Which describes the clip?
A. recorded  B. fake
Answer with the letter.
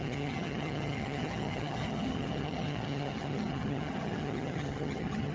B